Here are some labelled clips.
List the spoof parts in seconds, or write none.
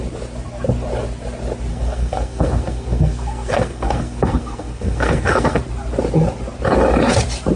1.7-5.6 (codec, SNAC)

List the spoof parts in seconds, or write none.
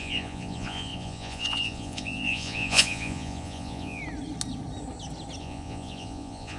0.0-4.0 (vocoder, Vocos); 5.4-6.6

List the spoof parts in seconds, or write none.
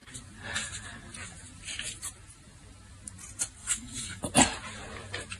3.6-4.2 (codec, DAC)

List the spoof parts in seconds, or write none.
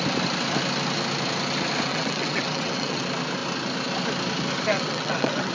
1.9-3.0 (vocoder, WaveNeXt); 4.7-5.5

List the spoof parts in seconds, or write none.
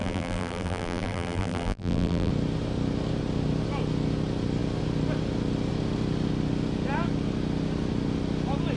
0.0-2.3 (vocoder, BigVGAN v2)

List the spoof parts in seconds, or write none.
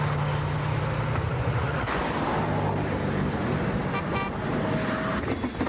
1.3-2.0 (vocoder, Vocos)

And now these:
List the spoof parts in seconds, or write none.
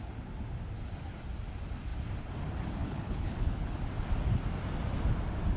2.8-3.8 (codec, HILCodec)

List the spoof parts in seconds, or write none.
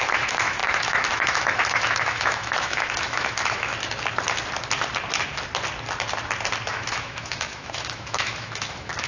0.0-3.7 (autoencoder, DAC-VAE); 6.7-9.1